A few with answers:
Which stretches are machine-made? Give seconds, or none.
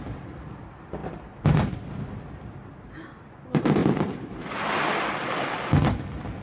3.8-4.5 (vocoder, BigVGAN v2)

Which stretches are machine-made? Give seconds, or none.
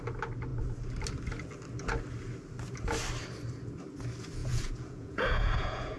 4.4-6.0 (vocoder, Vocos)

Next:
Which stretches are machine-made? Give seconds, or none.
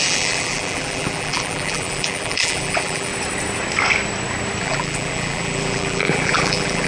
0.0-3.1 (vocoder, BigVGAN v2); 4.6-6.9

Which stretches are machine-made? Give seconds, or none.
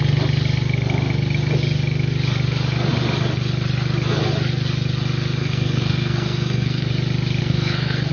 5.4-6.9 (codec, SNAC); 7.4-8.1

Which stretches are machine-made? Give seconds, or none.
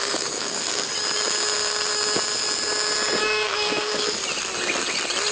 0.0-0.9 (codec, DAC); 3.2-4.2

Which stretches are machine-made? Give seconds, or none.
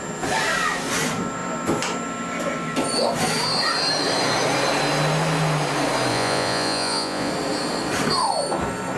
6.1-7.3 (vocoder, Vocos)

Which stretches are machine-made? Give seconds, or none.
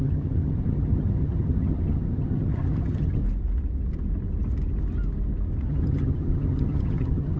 0.0-3.2 (vocoder, HiFi-GAN); 5.7-7.4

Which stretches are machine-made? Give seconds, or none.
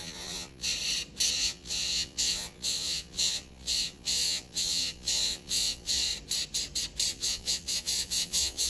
0.0-0.7 (vocoder, Vocos); 1.3-6.1; 7.1-8.7